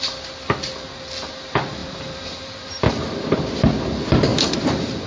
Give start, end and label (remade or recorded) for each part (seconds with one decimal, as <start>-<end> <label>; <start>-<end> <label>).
0.0-1.8 recorded; 1.8-3.2 remade; 3.2-4.3 recorded; 4.3-5.1 remade

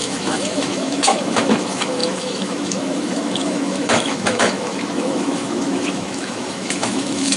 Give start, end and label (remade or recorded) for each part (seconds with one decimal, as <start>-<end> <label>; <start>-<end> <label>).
0.0-7.4 remade

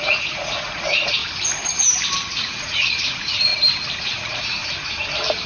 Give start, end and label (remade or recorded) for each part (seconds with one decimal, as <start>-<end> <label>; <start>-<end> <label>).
0.0-1.2 remade; 1.2-2.3 recorded; 2.3-3.5 remade; 3.5-4.0 recorded; 4.0-4.6 remade; 4.6-5.5 recorded

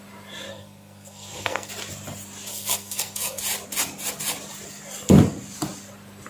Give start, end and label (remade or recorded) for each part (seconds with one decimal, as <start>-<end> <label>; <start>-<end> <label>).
0.0-0.5 recorded; 0.5-1.7 remade; 1.7-2.5 recorded; 2.5-3.4 remade; 3.4-6.3 recorded

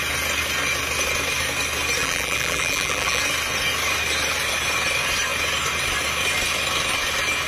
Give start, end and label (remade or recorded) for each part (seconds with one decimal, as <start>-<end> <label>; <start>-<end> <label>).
0.0-2.0 recorded; 2.0-3.2 remade; 3.2-7.5 recorded

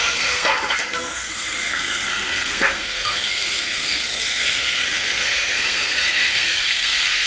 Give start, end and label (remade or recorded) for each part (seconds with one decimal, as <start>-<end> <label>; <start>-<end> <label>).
0.0-7.3 remade